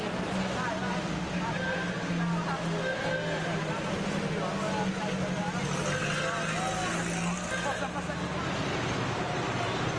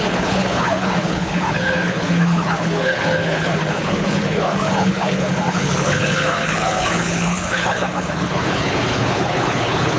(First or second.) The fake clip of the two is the second